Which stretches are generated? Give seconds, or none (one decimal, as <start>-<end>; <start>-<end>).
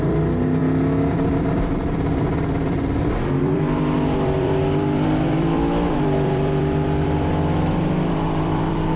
0.0-0.6; 1.1-9.0